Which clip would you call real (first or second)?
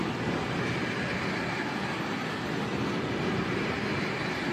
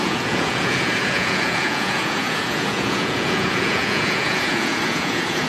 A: first